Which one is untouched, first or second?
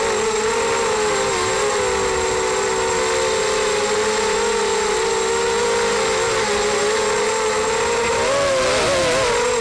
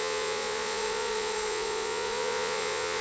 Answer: first